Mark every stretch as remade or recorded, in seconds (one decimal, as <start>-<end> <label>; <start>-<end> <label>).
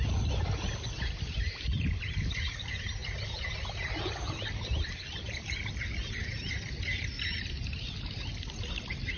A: 0.0-9.2 remade